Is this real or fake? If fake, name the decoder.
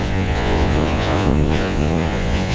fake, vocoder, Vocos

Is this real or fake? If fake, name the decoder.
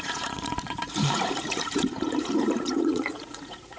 fake, vocoder, Vocos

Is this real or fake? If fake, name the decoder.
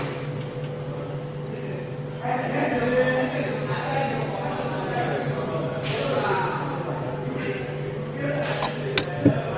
real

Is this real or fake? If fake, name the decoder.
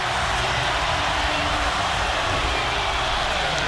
real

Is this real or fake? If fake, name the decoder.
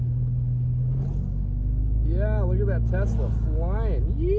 real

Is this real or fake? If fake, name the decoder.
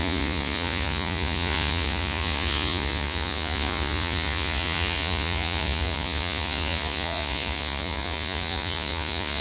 fake, vocoder, Vocos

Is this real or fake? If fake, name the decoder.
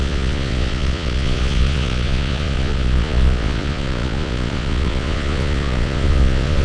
fake, vocoder, Vocos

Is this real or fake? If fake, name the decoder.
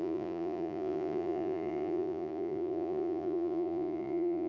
fake, vocoder, Vocos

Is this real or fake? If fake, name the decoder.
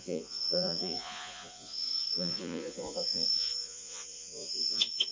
fake, vocoder, Vocos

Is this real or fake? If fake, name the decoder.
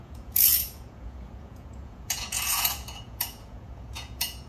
fake, vocoder, Vocos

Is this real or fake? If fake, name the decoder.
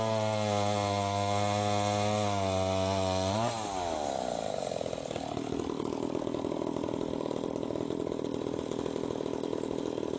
real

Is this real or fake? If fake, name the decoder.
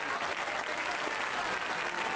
real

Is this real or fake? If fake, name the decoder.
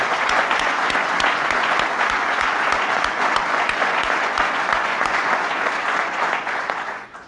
fake, vocoder, Vocos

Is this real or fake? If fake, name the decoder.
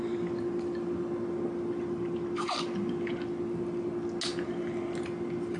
real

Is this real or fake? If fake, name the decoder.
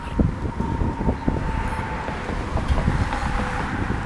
real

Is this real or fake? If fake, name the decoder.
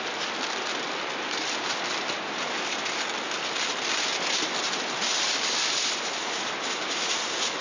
real